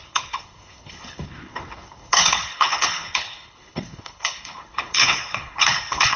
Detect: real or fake fake